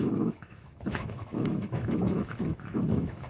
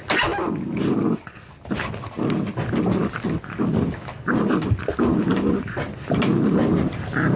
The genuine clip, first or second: second